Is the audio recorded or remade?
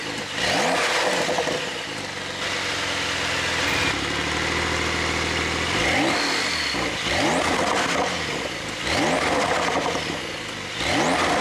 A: recorded